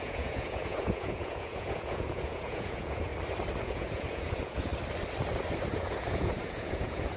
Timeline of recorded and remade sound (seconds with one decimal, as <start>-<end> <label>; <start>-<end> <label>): 0.0-3.1 remade; 3.1-3.6 recorded; 3.6-4.7 remade; 4.7-5.7 recorded; 5.7-7.2 remade